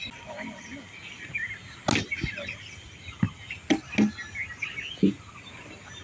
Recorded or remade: recorded